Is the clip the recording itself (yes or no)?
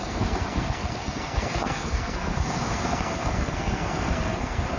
no